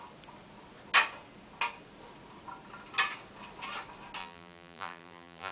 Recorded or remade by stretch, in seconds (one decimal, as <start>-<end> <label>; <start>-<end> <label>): 0.0-4.2 recorded; 4.2-5.5 remade